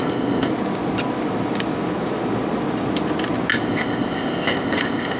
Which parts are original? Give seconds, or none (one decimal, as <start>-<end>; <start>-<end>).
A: 0.5-3.6